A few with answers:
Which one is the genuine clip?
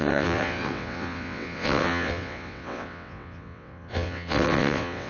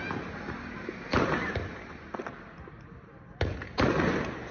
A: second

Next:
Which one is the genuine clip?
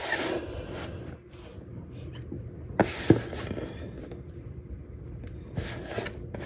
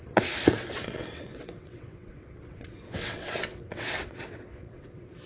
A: first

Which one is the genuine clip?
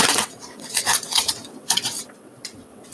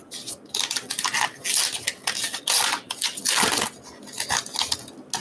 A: second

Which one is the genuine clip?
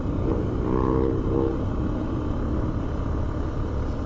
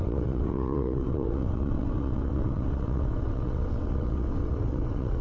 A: first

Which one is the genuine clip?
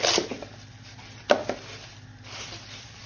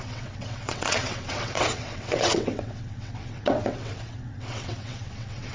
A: first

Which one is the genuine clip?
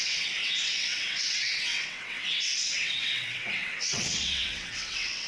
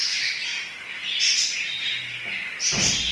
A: second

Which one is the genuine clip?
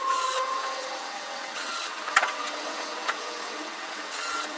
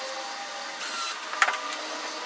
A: second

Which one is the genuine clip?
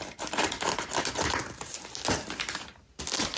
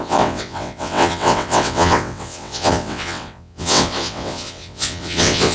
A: first